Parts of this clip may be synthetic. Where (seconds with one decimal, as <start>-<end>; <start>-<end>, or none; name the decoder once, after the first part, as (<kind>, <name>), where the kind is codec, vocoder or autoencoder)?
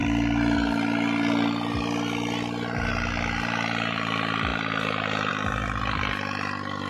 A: none